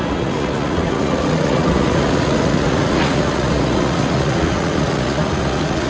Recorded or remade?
remade